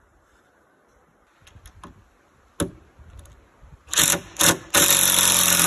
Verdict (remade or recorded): recorded